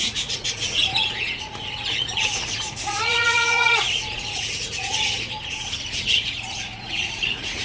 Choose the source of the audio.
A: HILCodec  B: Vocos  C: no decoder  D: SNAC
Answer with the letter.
B